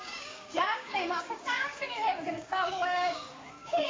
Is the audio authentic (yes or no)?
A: no